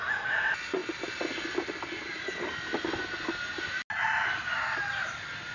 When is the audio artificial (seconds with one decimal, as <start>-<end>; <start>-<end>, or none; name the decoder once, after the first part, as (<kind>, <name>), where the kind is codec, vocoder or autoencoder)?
none